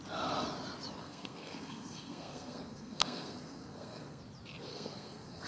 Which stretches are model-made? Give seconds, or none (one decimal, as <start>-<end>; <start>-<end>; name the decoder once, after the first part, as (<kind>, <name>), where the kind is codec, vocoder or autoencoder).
1.0-4.2 (codec, SNAC); 4.7-5.5